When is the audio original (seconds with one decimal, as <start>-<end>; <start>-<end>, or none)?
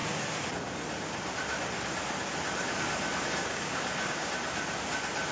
0.0-3.4; 4.3-5.3